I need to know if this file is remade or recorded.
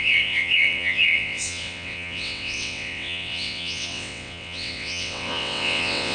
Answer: remade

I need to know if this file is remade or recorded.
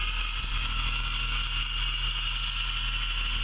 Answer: recorded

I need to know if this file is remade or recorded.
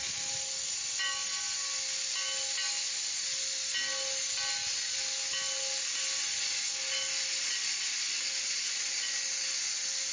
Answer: recorded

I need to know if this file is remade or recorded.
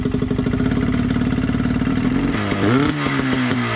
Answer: recorded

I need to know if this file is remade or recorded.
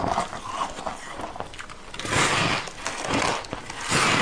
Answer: recorded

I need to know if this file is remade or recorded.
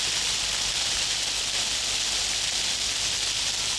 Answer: recorded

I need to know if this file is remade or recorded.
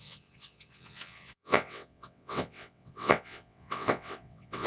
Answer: remade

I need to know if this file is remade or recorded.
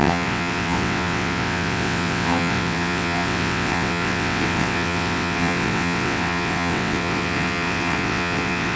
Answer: remade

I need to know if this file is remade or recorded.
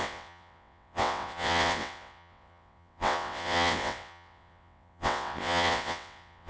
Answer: remade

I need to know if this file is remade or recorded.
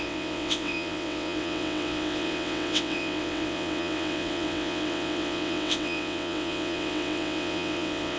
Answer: remade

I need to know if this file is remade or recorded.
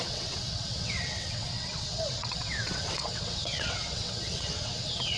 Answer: remade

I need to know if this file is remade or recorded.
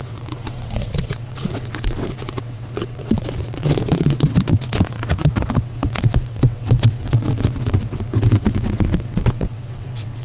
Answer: remade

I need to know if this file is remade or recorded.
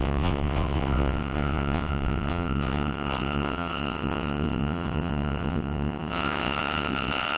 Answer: remade